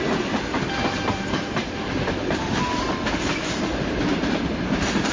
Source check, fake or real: fake